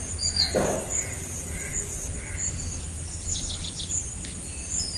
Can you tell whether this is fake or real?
real